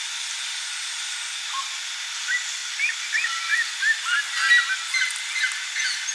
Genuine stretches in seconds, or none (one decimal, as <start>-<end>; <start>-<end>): 0.0-6.1